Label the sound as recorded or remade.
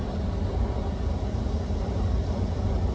recorded